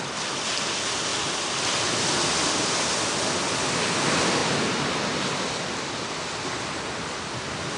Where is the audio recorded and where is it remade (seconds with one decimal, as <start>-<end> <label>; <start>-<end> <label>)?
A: 0.0-7.8 recorded